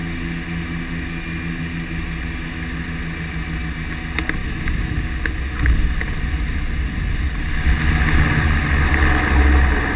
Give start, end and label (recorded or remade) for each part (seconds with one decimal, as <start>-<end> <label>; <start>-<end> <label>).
0.0-4.4 recorded; 4.4-5.0 remade; 5.0-10.0 recorded